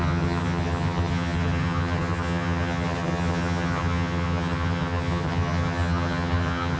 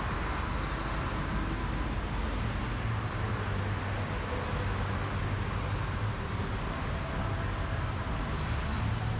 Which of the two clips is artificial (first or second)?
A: first